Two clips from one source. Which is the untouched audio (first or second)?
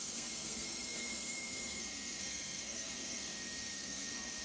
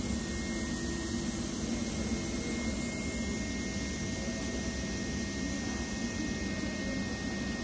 second